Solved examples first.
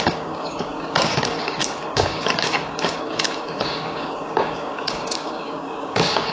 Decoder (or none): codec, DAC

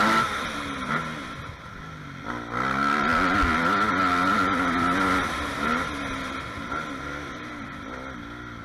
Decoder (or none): none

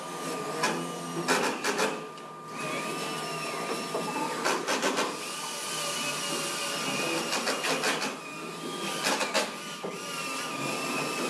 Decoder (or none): none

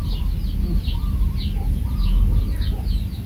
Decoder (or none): none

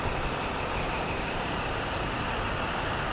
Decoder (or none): none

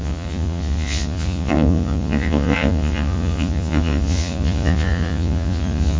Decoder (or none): vocoder, Vocos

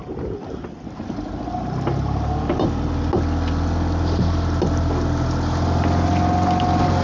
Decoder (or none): none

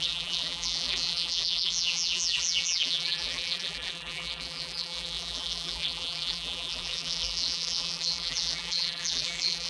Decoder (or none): vocoder, BigVGAN v2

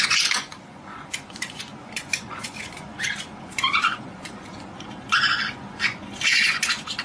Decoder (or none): vocoder, Vocos